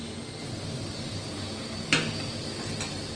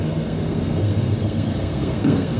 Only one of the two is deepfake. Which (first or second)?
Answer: second